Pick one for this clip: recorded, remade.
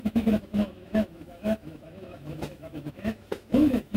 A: remade